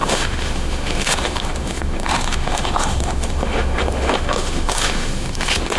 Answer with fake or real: fake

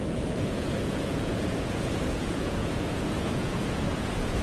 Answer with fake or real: fake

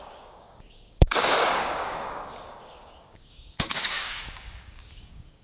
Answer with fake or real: fake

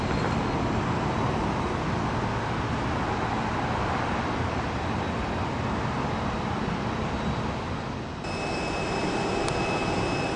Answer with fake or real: real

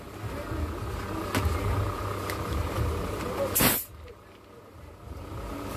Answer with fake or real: real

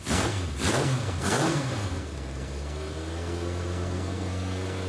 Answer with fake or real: fake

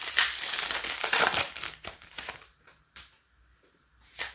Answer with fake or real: fake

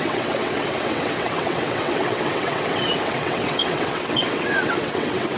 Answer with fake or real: fake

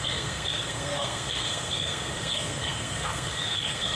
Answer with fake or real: fake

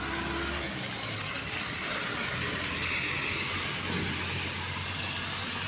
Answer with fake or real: real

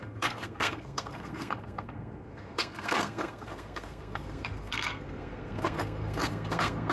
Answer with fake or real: fake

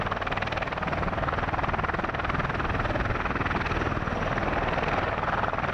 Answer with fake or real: real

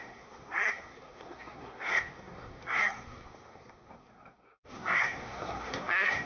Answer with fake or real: fake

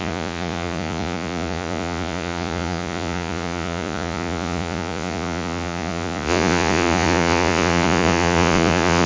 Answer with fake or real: fake